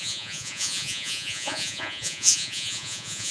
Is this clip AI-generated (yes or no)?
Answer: yes